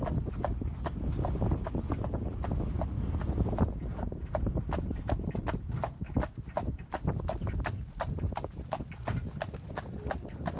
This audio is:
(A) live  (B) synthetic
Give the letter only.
A